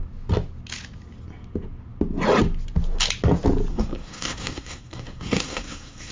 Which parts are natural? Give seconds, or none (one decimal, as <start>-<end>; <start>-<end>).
0.0-3.7